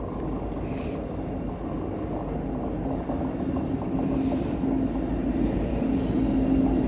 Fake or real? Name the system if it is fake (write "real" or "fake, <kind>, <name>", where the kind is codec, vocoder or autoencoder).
real